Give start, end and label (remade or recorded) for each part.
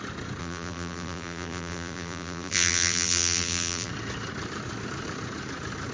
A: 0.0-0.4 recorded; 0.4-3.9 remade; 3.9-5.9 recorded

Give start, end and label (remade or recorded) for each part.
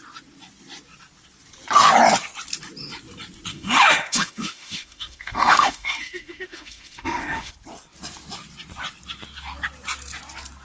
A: 0.0-3.5 recorded; 3.5-7.5 remade; 7.5-10.6 recorded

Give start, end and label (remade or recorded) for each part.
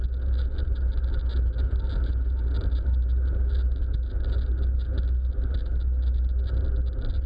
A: 0.0-7.3 recorded